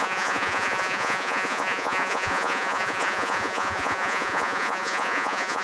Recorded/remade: remade